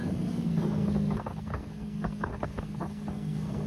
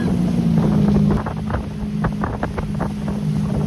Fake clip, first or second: first